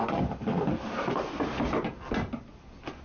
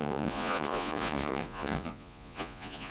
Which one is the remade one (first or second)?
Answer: second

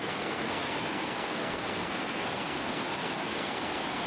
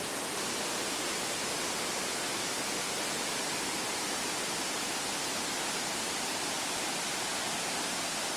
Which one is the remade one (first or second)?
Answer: first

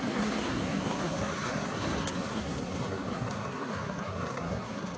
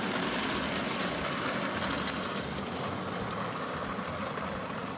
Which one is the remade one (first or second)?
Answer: first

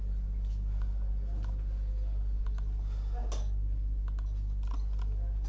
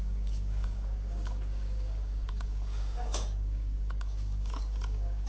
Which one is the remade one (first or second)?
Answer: second